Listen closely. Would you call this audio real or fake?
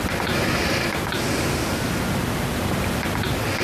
fake